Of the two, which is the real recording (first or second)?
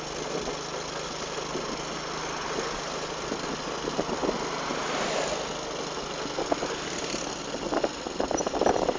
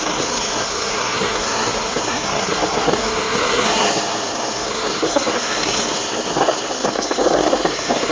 first